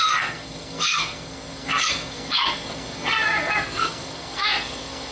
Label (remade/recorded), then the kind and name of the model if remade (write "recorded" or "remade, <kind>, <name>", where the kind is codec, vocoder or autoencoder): remade, codec, SNAC